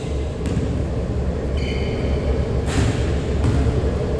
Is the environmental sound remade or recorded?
recorded